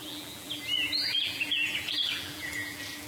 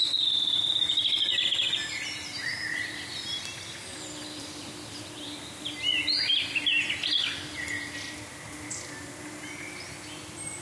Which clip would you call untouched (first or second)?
second